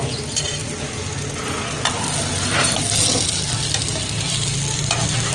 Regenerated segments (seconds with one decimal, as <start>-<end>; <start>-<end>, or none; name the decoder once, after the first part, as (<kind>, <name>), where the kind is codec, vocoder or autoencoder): none